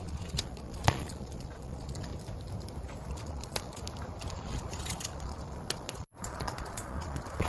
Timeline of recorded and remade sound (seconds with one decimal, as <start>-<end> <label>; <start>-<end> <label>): 0.0-2.1 remade; 2.1-3.1 recorded; 3.1-3.8 remade; 3.8-4.3 recorded; 4.3-7.5 remade